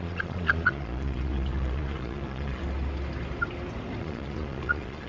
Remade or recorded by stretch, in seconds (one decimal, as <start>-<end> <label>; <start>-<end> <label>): 0.0-2.6 remade; 2.6-4.0 recorded; 4.0-5.1 remade